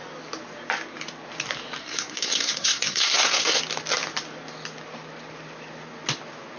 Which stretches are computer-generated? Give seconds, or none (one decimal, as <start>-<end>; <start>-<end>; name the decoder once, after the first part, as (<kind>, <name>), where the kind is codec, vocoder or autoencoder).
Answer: 1.8-3.6 (codec, SNAC)